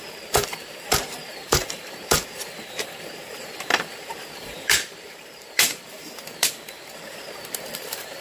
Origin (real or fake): fake